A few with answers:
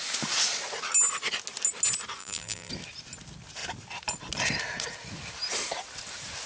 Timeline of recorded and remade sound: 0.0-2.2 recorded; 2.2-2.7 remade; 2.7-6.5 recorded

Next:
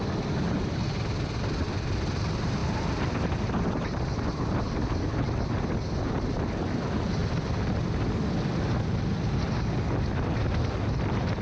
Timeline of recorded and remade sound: 0.0-2.6 recorded; 2.6-3.8 remade; 3.8-7.2 recorded; 7.2-8.5 remade; 8.5-11.4 recorded